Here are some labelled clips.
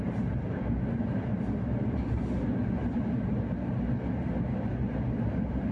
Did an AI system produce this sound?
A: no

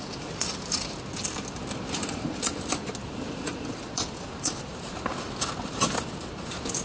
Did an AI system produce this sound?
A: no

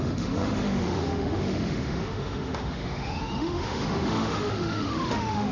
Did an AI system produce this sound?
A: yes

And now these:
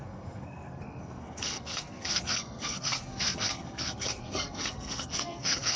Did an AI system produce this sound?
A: yes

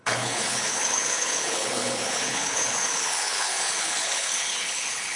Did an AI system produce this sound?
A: yes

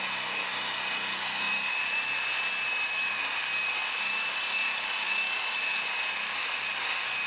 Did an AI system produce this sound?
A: no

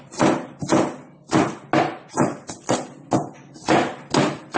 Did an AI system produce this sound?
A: no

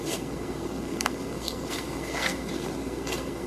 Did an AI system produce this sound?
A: yes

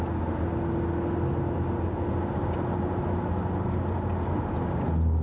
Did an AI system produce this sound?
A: no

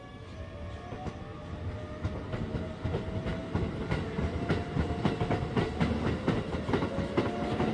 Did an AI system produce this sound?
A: no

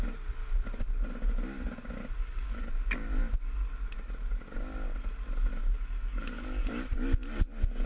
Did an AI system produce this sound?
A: no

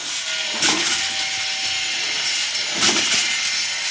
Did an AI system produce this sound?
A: no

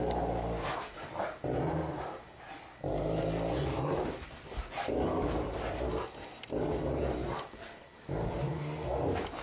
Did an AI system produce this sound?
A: no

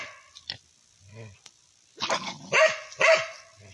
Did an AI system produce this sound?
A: no